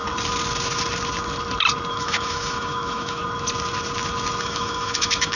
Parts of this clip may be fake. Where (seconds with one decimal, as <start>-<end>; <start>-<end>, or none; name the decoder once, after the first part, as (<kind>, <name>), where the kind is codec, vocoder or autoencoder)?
1.9-3.2 (autoencoder, DAC-VAE); 4.4-5.3